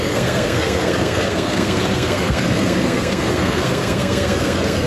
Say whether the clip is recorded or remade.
remade